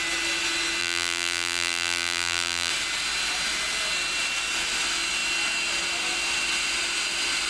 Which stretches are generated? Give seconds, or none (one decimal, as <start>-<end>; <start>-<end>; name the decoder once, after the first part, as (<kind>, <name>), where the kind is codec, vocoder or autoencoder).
0.8-2.7 (vocoder, BigVGAN v2)